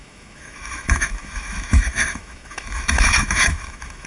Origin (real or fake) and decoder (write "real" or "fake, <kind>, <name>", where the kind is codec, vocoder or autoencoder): fake, autoencoder, DAC-VAE